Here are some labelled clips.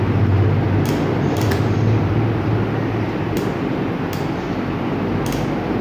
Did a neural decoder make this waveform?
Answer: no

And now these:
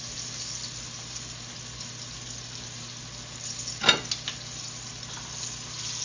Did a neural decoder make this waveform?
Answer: no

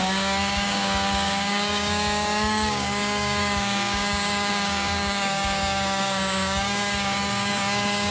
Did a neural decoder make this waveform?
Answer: yes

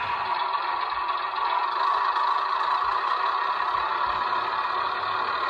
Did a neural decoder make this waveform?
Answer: no